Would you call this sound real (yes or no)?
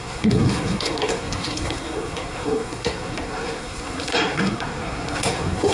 no